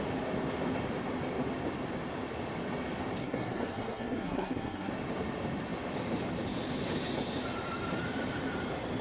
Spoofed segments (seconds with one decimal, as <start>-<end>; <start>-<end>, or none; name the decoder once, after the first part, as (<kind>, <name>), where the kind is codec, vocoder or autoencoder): 3.2-4.9 (codec, SNAC)